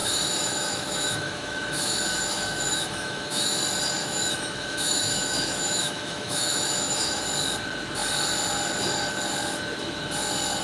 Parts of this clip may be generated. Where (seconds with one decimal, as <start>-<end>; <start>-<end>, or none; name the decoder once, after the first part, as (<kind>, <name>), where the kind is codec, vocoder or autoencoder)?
0.0-3.6 (autoencoder, DAC-VAE); 4.0-7.2